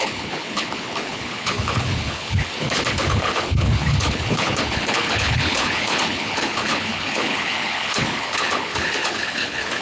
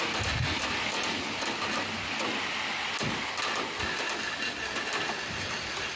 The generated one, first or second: first